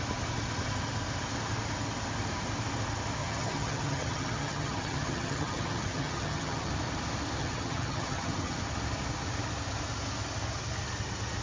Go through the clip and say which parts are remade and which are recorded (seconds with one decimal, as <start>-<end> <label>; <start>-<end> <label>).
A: 0.0-3.2 recorded; 3.2-6.7 remade; 6.7-7.4 recorded; 7.4-8.6 remade; 8.6-11.4 recorded